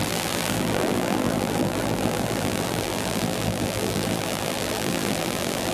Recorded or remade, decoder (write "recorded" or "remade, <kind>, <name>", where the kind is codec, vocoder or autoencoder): remade, vocoder, BigVGAN v2